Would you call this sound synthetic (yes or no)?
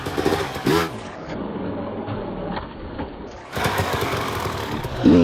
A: yes